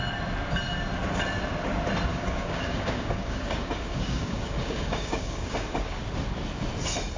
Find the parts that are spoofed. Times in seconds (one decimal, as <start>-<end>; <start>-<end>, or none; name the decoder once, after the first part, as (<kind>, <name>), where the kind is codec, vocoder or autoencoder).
2.1-6.0 (codec, DAC)